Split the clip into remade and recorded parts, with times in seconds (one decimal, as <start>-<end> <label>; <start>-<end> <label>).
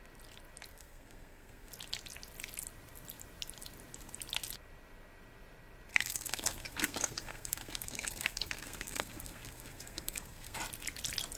0.0-0.7 recorded; 0.7-1.7 remade; 1.7-5.9 recorded; 5.9-10.6 remade; 10.6-11.4 recorded